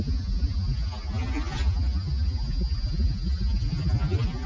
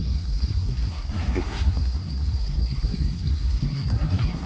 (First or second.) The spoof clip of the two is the second